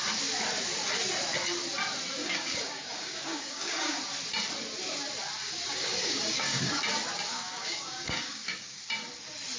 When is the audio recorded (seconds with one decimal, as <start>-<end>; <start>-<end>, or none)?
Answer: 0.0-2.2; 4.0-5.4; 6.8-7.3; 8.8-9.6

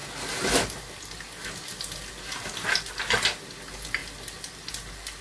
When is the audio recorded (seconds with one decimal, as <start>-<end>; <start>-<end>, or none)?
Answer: 0.0-5.2

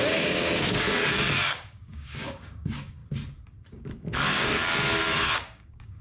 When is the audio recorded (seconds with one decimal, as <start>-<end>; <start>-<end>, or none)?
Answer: 3.0-3.7

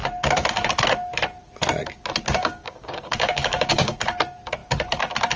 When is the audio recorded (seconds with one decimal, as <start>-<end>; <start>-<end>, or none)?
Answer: 0.0-2.4; 4.0-5.4